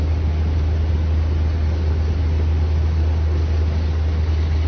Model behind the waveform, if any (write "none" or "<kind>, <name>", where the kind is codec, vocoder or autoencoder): none